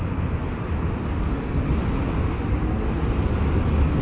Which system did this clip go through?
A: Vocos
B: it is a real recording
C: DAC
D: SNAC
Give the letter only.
B